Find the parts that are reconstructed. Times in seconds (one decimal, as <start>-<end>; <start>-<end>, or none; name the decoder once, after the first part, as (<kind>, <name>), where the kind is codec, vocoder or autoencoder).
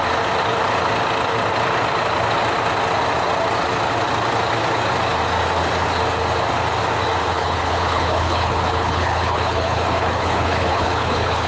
7.3-11.5 (codec, HILCodec)